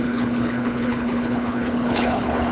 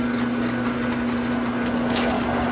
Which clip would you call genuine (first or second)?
second